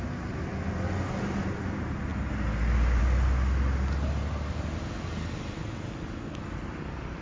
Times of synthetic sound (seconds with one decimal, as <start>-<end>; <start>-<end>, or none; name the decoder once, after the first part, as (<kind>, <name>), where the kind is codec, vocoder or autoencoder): none